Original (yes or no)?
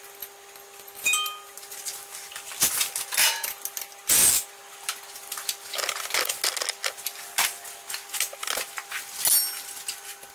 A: yes